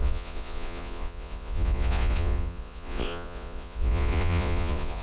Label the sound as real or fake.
fake